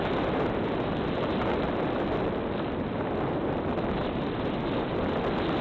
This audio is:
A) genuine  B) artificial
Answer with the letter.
A